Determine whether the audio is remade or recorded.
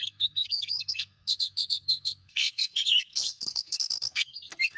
remade